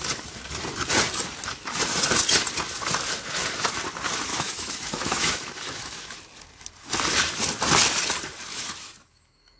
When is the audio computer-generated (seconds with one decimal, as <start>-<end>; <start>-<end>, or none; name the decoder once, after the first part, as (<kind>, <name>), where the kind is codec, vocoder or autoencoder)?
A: 4.3-6.2 (autoencoder, DAC-VAE); 8.5-9.6